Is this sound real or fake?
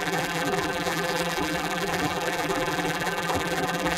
fake